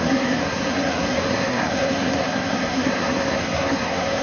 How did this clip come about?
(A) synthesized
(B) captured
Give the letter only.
A